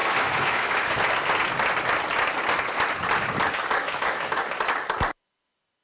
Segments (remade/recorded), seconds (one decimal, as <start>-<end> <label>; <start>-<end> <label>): 0.0-0.9 remade; 0.9-3.8 recorded; 3.8-4.4 remade; 4.4-5.8 recorded